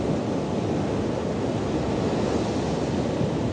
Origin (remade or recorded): recorded